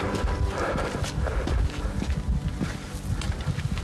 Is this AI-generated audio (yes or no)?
no